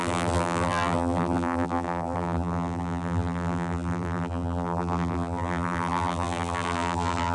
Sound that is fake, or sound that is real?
fake